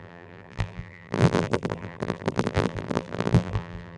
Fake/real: fake